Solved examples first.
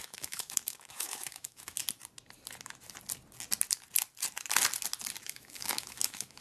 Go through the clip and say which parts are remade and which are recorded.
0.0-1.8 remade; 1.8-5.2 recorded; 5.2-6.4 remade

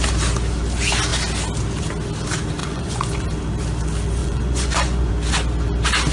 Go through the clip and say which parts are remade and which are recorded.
0.0-2.6 recorded; 2.6-3.2 remade; 3.2-4.2 recorded; 4.2-5.1 remade; 5.1-6.1 recorded

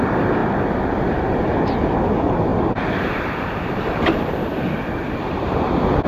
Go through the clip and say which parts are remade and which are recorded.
0.0-2.5 recorded; 2.5-5.5 remade; 5.5-6.1 recorded

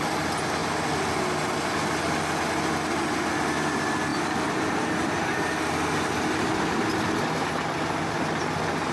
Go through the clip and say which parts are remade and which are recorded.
0.0-8.9 recorded

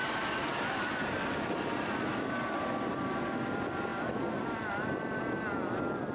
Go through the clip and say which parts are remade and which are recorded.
0.0-6.1 recorded

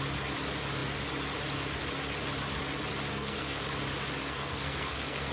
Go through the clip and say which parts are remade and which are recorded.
0.0-3.1 recorded; 3.1-3.6 remade; 3.6-4.2 recorded; 4.2-5.3 remade

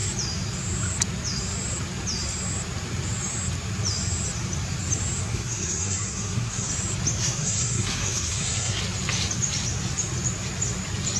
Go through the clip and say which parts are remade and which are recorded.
0.0-5.2 recorded; 5.2-6.7 remade; 6.7-7.2 recorded; 7.2-8.8 remade; 8.8-11.2 recorded